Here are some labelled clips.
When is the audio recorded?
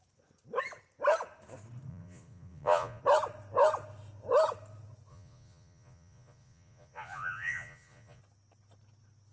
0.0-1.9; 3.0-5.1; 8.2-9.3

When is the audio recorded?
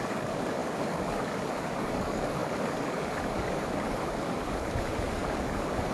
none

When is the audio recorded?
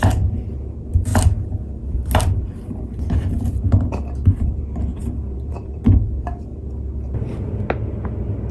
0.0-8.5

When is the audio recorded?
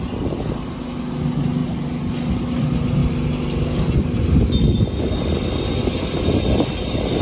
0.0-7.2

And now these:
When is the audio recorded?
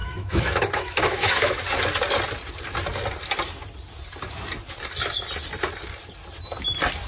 1.6-7.1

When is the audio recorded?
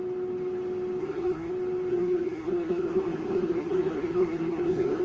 0.0-1.0; 1.5-1.9